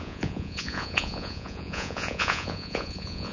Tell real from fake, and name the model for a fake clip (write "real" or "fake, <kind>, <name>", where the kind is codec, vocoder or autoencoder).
fake, vocoder, Vocos